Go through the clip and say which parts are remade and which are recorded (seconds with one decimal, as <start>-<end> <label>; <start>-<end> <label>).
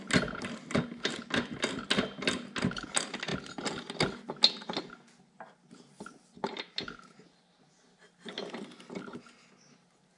0.0-10.2 recorded